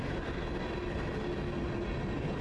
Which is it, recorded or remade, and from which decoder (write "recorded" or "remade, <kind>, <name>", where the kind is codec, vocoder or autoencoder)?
recorded